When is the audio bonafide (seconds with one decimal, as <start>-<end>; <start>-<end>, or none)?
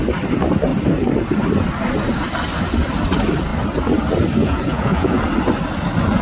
0.0-4.4; 5.2-6.2